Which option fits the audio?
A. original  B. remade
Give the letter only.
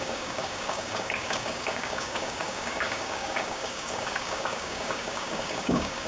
B